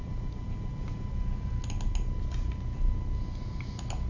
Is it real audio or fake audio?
real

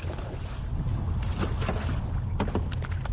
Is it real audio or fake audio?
real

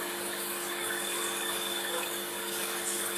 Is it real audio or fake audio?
fake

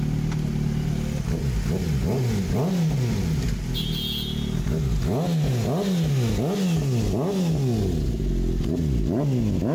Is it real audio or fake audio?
real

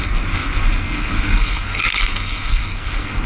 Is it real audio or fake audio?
fake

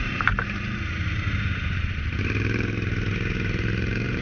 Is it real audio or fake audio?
fake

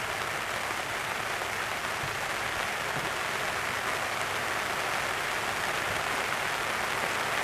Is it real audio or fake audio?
real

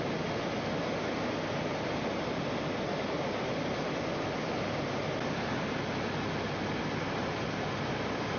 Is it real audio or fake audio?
real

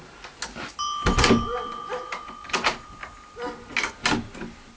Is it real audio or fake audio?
real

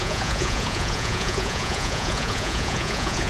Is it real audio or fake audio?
fake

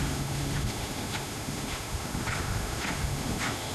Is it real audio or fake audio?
fake